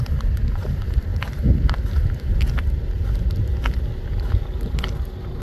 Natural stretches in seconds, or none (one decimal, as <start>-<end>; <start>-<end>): 0.0-5.4